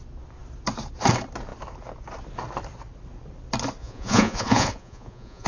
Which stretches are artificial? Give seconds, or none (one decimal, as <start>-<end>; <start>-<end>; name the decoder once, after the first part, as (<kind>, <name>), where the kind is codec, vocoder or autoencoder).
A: 3.8-5.5 (vocoder, Vocos)